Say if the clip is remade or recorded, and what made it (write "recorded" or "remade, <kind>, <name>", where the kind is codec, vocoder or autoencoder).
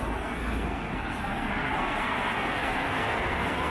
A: remade, codec, SNAC